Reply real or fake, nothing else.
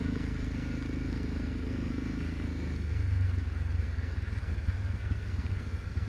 fake